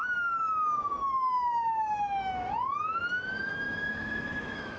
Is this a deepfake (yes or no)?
yes